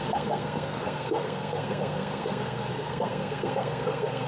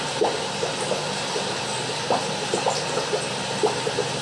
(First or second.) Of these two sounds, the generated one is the first